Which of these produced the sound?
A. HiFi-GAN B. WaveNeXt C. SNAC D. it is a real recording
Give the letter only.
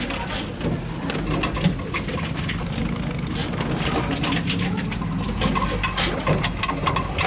D